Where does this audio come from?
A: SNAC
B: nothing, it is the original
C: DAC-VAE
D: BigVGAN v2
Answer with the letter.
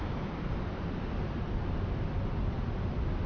D